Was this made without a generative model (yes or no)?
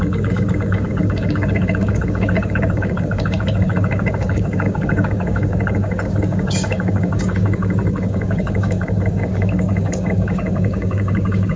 no